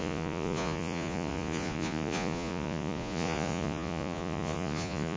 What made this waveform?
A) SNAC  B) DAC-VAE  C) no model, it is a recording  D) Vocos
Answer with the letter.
D